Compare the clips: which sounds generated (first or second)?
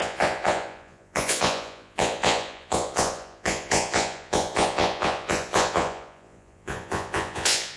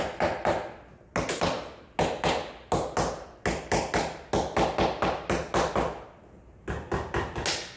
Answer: first